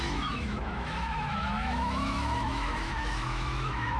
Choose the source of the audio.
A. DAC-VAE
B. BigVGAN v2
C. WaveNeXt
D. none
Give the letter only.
A